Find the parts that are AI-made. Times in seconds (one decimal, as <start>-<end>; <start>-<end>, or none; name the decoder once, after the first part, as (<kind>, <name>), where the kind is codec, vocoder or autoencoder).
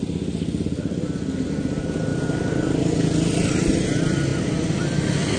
none